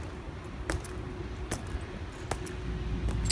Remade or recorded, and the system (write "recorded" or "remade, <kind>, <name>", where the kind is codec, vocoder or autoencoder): recorded